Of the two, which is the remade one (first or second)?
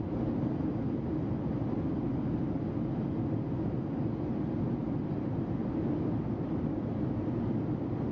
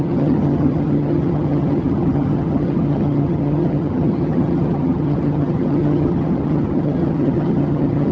second